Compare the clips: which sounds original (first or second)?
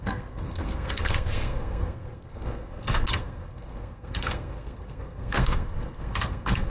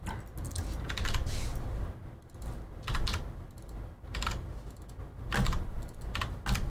second